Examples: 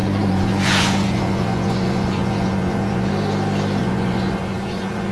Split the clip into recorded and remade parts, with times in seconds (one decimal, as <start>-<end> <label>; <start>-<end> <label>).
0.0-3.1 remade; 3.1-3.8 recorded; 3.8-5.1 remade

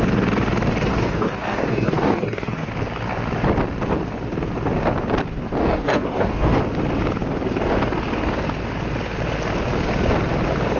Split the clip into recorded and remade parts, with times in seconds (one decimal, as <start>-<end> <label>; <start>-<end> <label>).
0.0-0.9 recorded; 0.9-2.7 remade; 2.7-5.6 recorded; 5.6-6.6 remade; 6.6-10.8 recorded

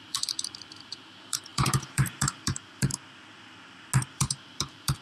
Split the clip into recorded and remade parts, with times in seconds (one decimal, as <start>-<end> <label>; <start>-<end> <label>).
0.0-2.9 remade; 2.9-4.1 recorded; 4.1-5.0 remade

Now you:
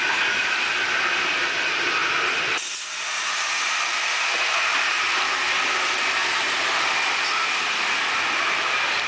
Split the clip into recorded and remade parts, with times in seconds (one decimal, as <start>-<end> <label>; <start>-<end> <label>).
0.0-9.1 recorded

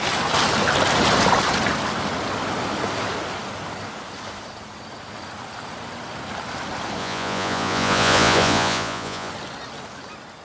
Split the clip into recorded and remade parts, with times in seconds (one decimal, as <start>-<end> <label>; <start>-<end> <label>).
0.0-7.0 recorded; 7.0-9.3 remade; 9.3-10.4 recorded

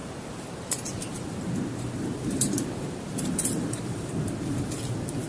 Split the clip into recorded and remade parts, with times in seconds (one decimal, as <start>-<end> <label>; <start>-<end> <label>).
0.0-0.5 remade; 0.5-1.1 recorded; 1.1-4.3 remade; 4.3-5.3 recorded

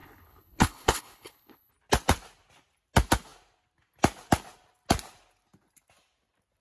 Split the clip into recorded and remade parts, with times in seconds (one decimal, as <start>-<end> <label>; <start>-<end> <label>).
0.0-1.7 remade; 1.7-6.6 recorded

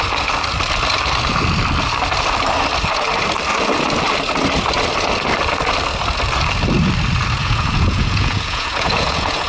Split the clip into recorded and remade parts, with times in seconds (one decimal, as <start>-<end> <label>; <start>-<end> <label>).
0.0-7.4 recorded; 7.4-9.5 remade